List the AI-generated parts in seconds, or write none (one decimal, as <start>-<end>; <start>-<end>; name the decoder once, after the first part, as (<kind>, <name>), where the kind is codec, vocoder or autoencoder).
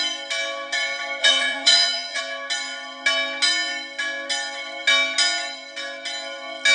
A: 1.2-2.2 (vocoder, Vocos)